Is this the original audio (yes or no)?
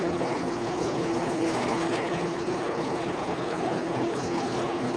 no